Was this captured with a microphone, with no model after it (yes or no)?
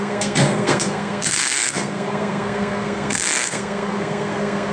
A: no